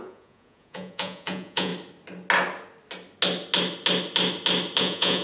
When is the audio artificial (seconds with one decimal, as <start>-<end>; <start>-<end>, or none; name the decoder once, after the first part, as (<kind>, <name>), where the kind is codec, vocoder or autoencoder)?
0.0-1.7 (vocoder, Vocos); 4.8-5.2